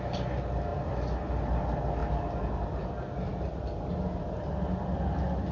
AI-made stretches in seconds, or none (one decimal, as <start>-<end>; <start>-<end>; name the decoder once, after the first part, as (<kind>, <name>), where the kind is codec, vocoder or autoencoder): none